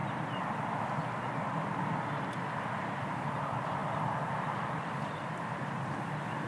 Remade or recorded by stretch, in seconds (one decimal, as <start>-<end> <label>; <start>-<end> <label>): 0.0-2.8 recorded; 2.8-6.5 remade